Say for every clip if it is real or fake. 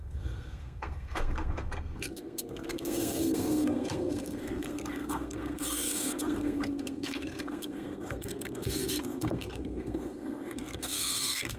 fake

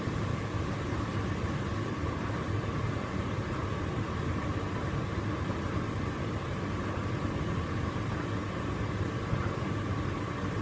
real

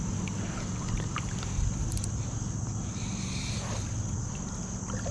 real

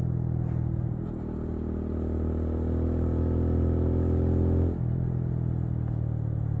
real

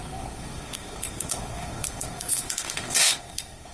fake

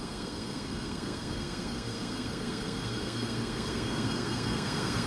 fake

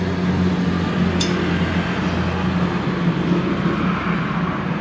real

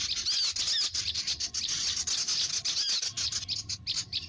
real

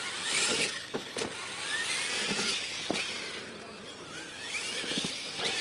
real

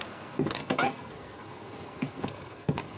fake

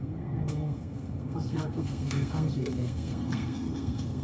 fake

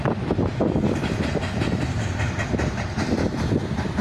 real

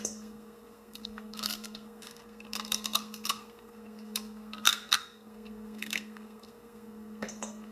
fake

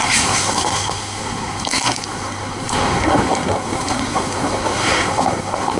fake